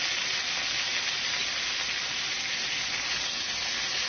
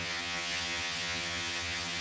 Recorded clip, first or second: first